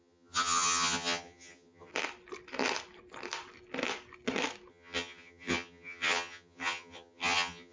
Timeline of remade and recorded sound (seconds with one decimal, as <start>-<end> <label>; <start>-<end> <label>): 0.0-1.9 remade; 1.9-4.7 recorded; 4.7-7.7 remade